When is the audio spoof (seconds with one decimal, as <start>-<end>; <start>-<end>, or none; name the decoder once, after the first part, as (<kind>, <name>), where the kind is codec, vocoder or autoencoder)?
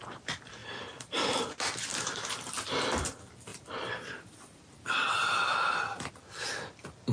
0.6-1.5 (vocoder, BigVGAN v2); 3.5-4.7